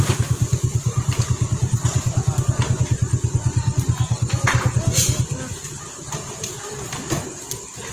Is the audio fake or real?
real